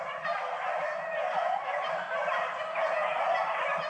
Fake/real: real